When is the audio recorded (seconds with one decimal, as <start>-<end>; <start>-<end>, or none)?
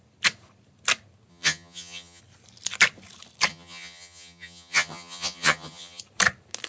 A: 0.0-1.3; 2.2-3.5; 6.0-6.7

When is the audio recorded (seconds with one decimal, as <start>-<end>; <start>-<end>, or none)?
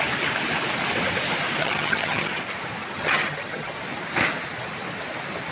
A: 0.0-1.6; 2.4-2.8; 3.8-5.5